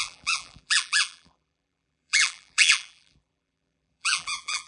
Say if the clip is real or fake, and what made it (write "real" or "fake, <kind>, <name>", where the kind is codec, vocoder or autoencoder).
fake, vocoder, BigVGAN v2